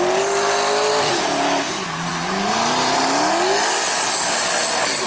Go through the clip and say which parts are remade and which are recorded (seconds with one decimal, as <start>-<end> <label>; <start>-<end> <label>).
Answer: 0.0-5.1 recorded